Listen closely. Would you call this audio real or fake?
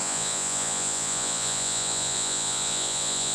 fake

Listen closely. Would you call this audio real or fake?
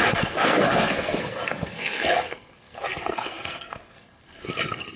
fake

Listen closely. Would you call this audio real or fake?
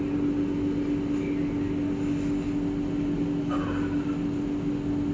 real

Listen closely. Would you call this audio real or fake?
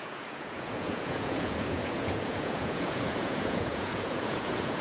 fake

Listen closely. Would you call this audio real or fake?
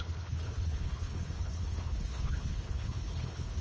fake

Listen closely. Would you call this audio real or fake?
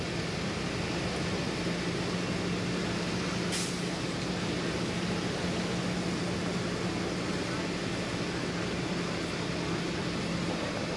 real